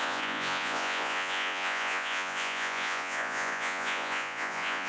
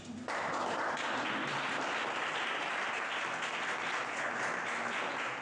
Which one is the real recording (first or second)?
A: second